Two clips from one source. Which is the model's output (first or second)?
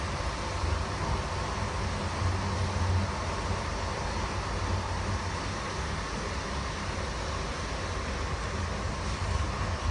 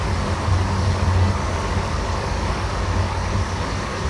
second